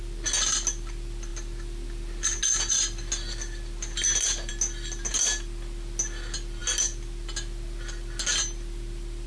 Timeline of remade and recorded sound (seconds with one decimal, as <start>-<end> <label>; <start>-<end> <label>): 0.0-9.3 recorded